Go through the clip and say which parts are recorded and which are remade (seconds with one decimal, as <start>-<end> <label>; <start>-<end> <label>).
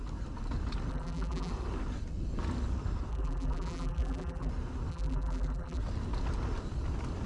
0.0-0.9 recorded; 0.9-1.5 remade; 1.5-3.1 recorded; 3.1-4.5 remade; 4.5-4.9 recorded; 4.9-5.8 remade; 5.8-7.3 recorded